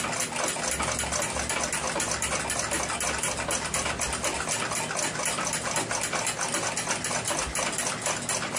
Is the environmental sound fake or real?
real